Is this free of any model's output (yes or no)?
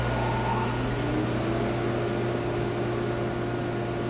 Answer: yes